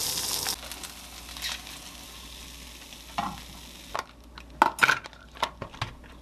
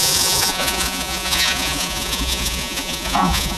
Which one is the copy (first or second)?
second